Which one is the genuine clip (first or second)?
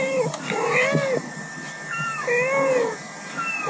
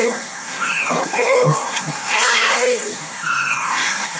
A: first